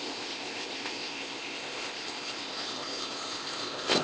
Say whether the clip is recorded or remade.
remade